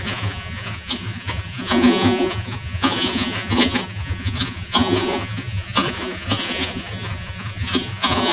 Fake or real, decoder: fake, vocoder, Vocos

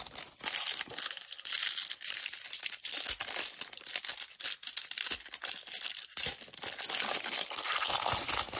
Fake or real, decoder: real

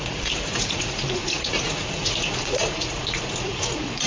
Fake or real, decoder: fake, vocoder, Vocos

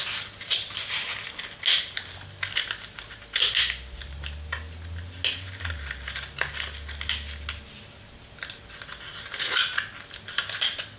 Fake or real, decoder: real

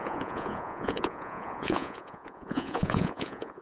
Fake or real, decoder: fake, vocoder, Vocos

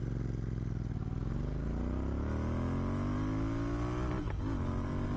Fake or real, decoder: real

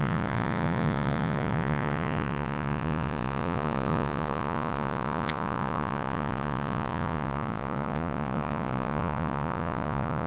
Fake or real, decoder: fake, vocoder, Vocos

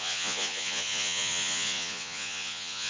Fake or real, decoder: fake, vocoder, Vocos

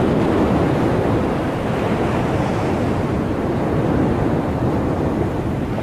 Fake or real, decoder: real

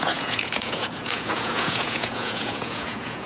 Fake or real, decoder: fake, vocoder, Vocos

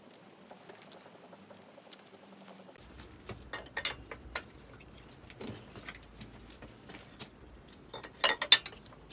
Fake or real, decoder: real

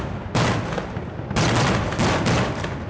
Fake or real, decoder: real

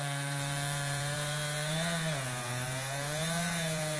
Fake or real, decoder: fake, vocoder, Vocos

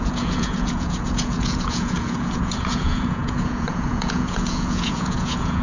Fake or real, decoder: fake, vocoder, Vocos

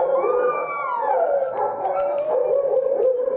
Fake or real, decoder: real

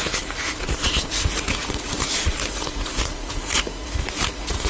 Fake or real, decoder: fake, vocoder, Vocos